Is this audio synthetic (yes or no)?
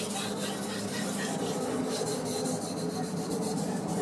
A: no